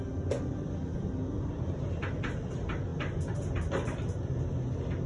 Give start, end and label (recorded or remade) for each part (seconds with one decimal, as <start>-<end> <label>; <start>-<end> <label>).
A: 0.0-5.1 recorded